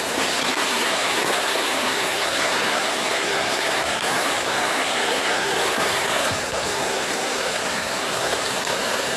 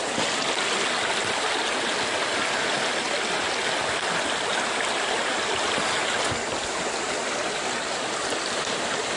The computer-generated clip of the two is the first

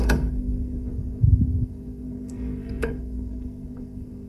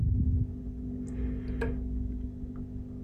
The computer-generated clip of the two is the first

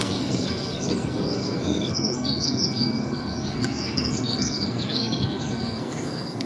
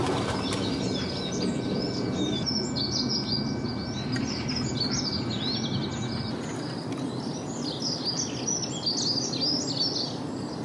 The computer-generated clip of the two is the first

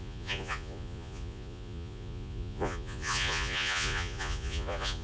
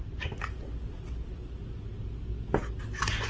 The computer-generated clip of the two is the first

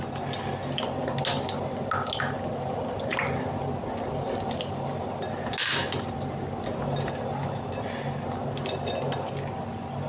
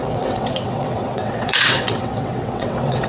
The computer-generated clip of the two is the second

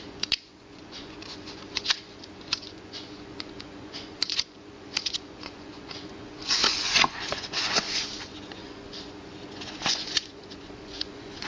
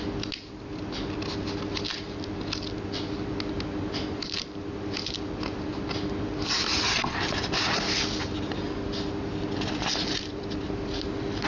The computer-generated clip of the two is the first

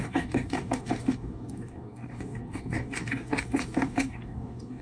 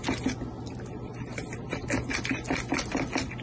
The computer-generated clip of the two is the first